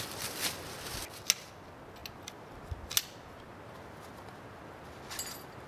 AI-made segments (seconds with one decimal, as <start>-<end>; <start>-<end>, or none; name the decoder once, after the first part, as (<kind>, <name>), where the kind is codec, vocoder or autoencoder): none